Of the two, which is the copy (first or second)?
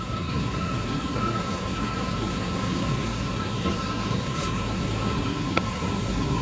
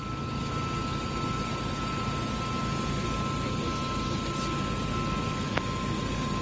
first